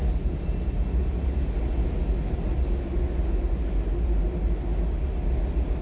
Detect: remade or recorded recorded